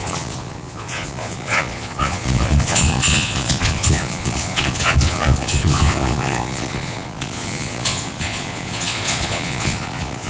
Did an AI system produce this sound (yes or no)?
yes